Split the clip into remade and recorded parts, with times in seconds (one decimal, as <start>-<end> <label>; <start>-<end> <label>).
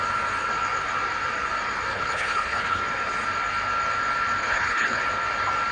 0.0-1.9 recorded; 1.9-2.8 remade; 2.8-4.4 recorded; 4.4-5.0 remade; 5.0-5.7 recorded